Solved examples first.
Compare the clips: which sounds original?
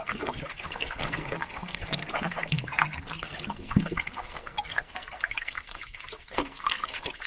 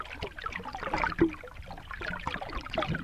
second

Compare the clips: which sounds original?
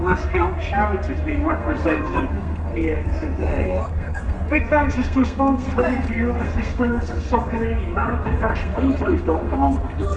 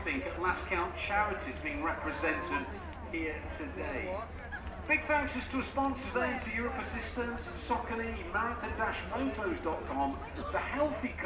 second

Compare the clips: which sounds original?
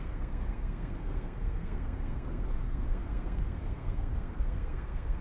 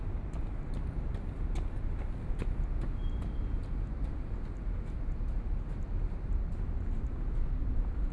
second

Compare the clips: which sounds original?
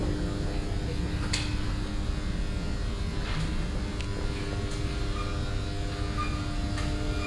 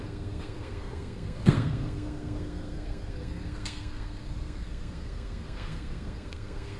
first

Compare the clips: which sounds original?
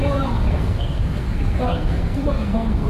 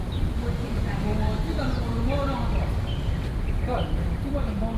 second